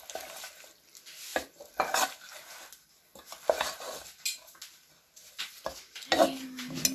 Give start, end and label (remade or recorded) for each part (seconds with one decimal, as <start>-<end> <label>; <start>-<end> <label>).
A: 0.0-6.9 recorded

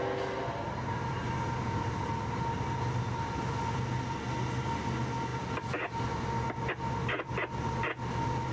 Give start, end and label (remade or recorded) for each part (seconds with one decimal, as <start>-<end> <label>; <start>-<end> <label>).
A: 0.0-8.5 recorded

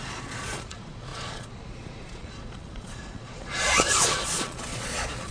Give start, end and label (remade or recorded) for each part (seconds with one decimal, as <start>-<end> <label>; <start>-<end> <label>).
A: 0.0-5.3 remade

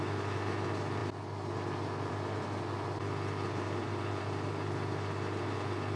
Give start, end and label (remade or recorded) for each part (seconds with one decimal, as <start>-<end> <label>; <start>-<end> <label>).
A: 0.0-6.0 recorded

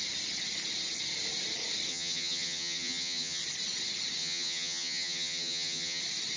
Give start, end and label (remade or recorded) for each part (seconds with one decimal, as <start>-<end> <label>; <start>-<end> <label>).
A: 0.0-1.9 recorded; 1.9-3.4 remade; 3.4-4.2 recorded; 4.2-6.0 remade; 6.0-6.4 recorded

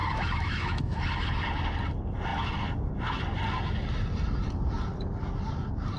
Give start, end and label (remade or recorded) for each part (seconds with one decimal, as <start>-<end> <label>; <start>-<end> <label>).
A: 0.0-1.0 remade; 1.0-6.0 recorded